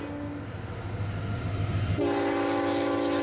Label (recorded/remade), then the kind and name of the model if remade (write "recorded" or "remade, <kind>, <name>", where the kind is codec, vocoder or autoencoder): recorded